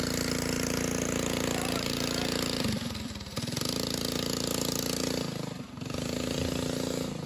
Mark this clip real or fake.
real